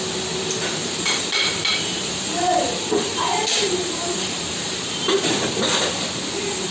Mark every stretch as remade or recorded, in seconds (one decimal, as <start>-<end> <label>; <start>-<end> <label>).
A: 0.0-0.8 recorded; 0.8-4.8 remade; 4.8-6.7 recorded